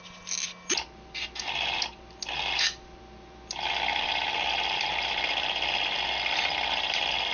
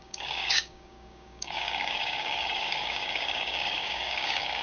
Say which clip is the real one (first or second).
first